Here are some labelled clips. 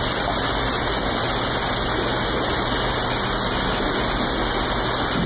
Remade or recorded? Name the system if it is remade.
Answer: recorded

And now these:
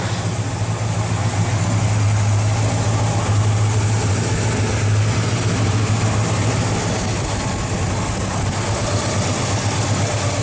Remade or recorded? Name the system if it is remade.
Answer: recorded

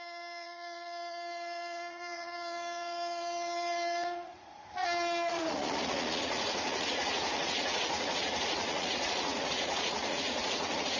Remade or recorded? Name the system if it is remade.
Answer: remade, vocoder, Vocos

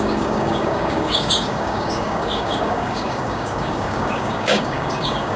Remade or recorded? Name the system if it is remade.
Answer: remade, codec, DAC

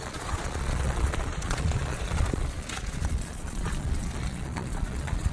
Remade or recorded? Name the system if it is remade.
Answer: remade, vocoder, Vocos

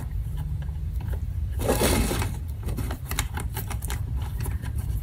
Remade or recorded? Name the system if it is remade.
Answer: remade, vocoder, BigVGAN v2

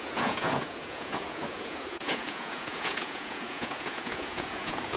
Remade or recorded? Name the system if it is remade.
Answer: remade, vocoder, Vocos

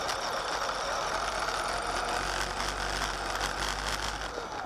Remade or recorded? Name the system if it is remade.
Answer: recorded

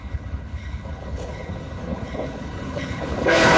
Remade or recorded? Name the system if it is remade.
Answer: remade, codec, HILCodec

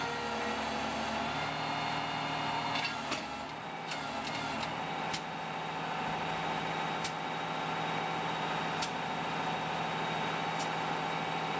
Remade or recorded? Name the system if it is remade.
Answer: recorded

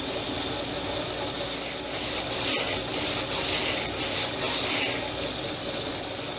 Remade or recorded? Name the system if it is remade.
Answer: recorded